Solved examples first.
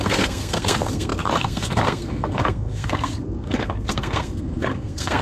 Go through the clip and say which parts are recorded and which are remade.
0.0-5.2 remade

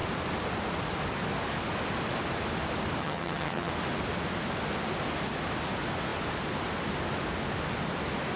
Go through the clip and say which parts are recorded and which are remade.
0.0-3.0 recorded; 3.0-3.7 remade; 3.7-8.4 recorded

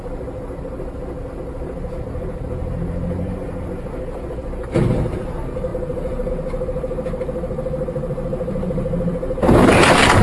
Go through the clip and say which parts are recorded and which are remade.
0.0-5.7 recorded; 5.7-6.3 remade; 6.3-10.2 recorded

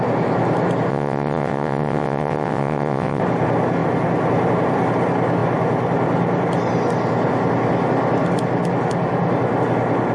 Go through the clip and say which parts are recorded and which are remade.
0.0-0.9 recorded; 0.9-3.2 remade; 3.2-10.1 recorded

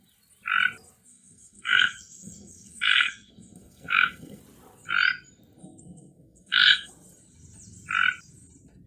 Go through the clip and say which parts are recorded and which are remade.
0.0-1.1 recorded; 1.1-4.4 remade; 4.4-5.6 recorded; 5.6-6.9 remade; 6.9-8.9 recorded

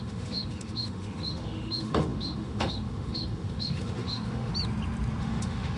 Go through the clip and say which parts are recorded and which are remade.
0.0-4.5 remade; 4.5-5.2 recorded; 5.2-5.8 remade

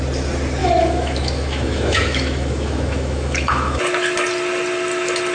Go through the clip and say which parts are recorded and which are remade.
0.0-0.6 recorded; 0.6-3.8 remade; 3.8-5.3 recorded